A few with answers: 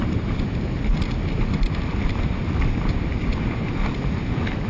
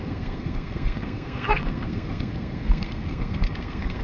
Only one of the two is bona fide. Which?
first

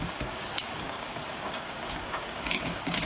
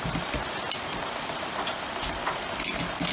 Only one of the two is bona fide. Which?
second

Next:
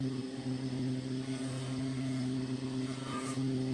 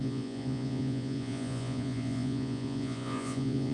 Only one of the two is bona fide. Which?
first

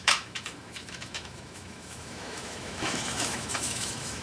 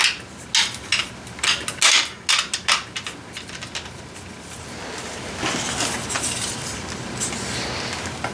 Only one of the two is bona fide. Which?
second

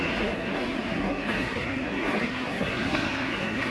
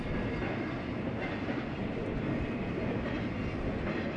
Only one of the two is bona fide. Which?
second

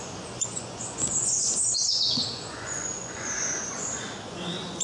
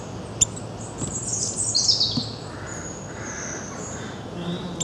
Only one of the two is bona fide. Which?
second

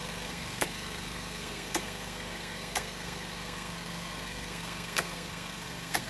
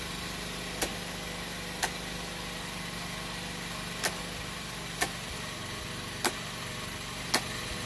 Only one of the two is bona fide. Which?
second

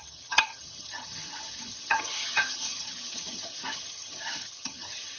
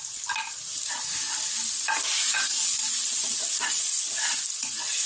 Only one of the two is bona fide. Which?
second